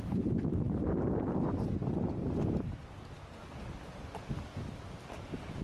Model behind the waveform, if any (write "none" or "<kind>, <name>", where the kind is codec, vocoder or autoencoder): none